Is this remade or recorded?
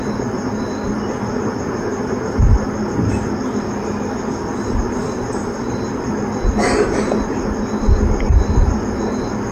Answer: recorded